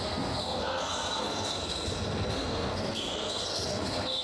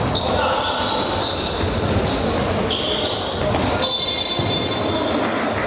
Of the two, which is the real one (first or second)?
second